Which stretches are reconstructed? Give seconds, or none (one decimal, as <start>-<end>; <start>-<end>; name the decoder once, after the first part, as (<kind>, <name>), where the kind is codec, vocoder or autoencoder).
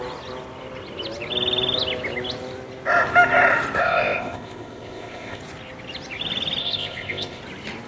3.8-5.4 (codec, ZipCodec); 6.6-7.4